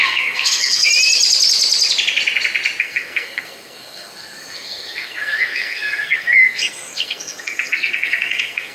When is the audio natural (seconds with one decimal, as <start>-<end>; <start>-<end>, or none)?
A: 0.9-2.8